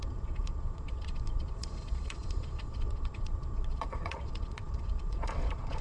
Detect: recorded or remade remade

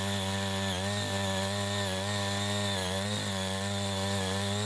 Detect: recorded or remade recorded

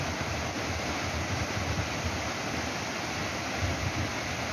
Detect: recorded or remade recorded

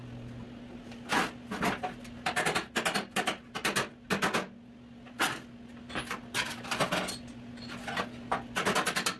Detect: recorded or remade recorded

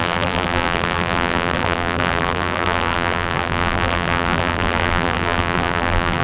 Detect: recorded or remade remade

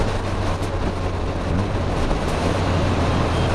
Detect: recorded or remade recorded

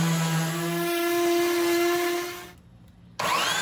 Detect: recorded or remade recorded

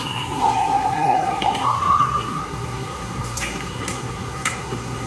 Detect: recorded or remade remade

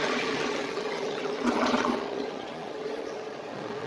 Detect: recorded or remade remade